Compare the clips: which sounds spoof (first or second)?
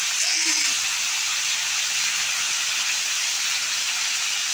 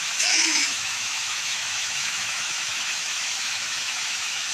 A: second